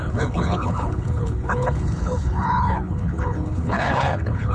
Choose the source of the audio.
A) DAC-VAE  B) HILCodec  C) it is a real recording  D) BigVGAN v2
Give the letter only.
B